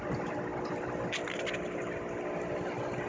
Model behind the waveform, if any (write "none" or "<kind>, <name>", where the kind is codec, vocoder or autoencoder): none